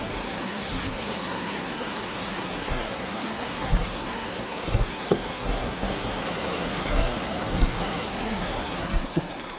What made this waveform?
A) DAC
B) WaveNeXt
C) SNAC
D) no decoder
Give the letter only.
C